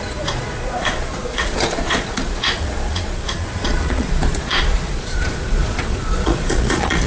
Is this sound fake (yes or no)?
yes